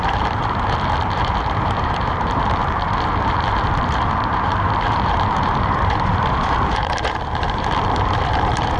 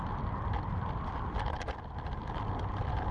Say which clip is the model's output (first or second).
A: first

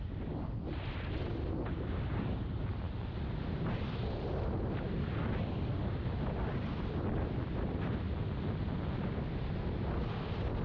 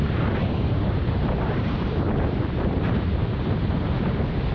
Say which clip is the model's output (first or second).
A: second